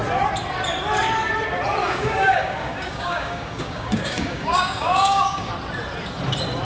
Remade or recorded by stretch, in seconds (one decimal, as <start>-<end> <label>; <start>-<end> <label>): 0.0-1.8 recorded; 1.8-5.5 remade; 5.5-6.6 recorded